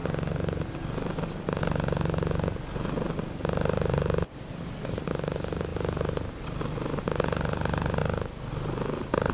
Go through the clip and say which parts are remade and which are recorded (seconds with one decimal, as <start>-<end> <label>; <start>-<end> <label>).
0.0-9.3 recorded